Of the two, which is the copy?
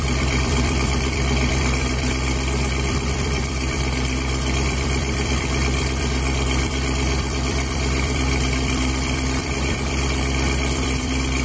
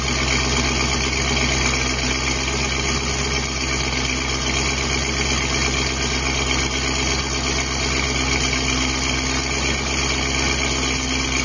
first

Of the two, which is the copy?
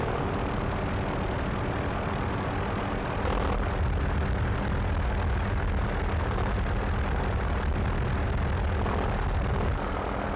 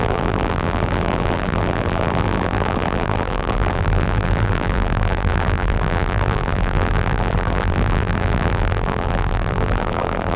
second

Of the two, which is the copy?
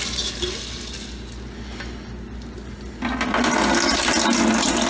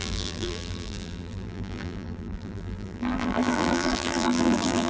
second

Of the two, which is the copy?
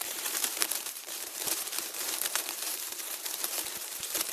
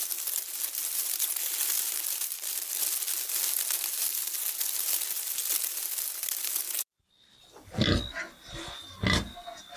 first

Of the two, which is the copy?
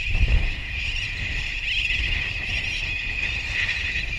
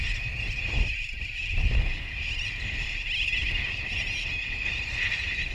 first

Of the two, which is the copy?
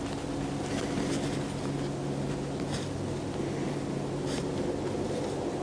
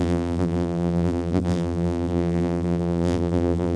second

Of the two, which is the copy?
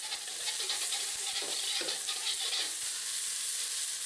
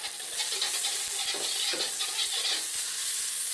first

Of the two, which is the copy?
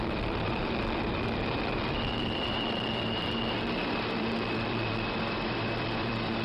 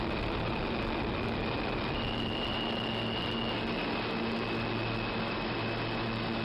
first